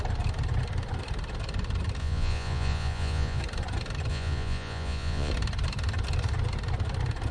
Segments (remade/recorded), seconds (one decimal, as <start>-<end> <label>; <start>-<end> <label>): 0.0-2.0 recorded; 2.0-3.4 remade; 3.4-4.1 recorded; 4.1-5.3 remade; 5.3-7.3 recorded